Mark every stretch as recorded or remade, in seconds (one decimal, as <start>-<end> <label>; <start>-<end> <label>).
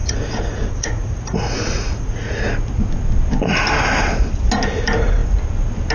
0.0-2.4 remade; 2.4-5.9 recorded